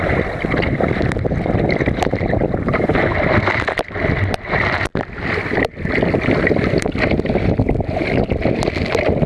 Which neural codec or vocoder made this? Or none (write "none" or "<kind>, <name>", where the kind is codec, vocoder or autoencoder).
none